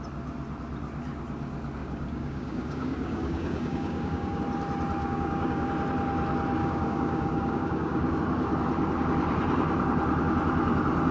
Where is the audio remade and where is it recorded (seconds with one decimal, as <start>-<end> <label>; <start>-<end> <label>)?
0.0-1.8 recorded; 1.8-4.4 remade; 4.4-5.0 recorded; 5.0-5.7 remade; 5.7-6.6 recorded; 6.6-8.2 remade; 8.2-11.1 recorded